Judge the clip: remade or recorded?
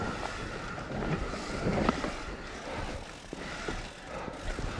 recorded